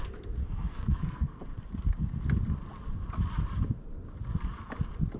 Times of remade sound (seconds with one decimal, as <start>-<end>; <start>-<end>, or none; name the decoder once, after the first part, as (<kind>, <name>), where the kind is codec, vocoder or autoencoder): 0.4-1.4 (codec, SNAC)